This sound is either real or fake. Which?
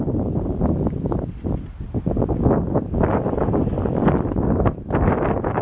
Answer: real